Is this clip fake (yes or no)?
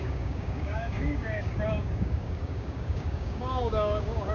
yes